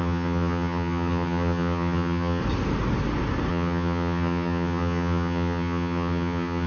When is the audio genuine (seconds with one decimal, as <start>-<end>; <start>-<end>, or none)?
2.4-3.5